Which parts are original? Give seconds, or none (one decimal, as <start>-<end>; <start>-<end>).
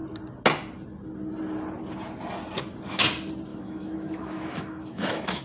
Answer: 0.0-3.5